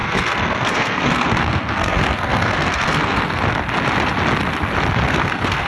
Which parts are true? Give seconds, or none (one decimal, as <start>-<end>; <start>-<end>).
3.4-5.1